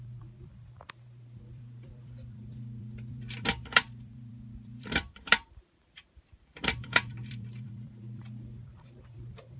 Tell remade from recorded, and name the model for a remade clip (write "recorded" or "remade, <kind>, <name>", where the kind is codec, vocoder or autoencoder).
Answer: remade, vocoder, BigVGAN v2